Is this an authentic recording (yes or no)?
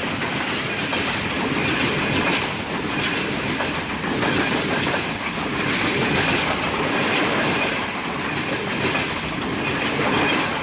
yes